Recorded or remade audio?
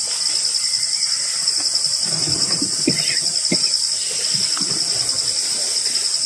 recorded